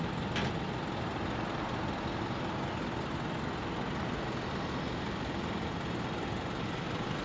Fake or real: real